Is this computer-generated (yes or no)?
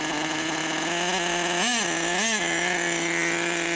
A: no